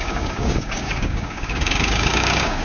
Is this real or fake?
fake